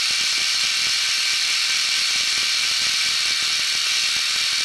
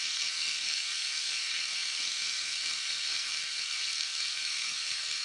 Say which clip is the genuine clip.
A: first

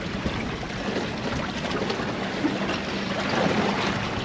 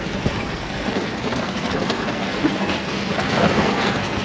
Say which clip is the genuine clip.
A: first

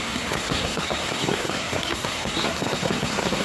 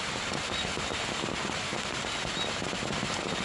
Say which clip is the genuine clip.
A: second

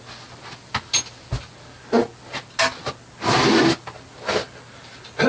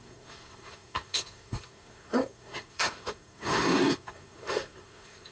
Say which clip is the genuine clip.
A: first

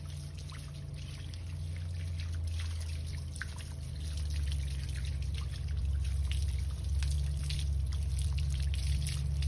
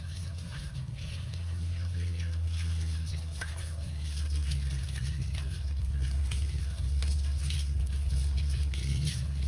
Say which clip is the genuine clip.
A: first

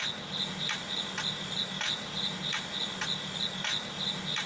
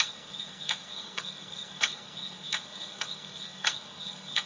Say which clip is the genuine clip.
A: first